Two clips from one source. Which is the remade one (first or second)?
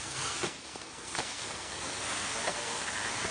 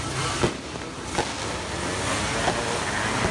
first